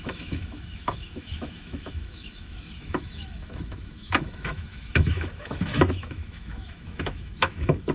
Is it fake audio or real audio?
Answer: fake